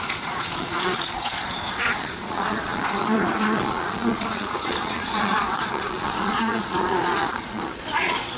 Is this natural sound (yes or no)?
no